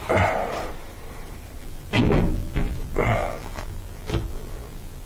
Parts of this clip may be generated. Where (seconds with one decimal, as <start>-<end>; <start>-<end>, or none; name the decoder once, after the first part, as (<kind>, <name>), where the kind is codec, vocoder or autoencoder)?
1.6-5.1 (vocoder, BigVGAN v2)